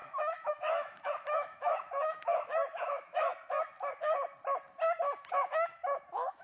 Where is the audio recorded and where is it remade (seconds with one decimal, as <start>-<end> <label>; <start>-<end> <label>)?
0.0-3.3 remade; 3.3-5.3 recorded; 5.3-6.4 remade